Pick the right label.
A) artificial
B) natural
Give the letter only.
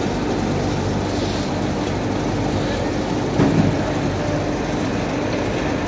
B